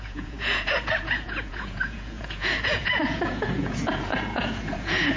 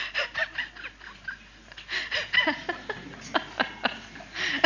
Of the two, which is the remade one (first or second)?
first